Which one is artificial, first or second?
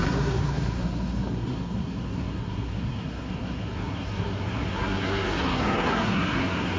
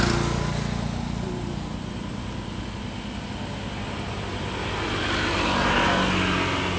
first